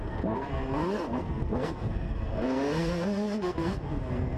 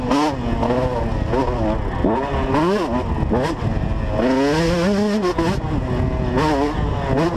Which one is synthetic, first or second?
first